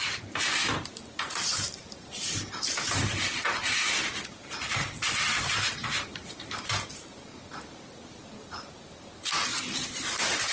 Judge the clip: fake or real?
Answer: fake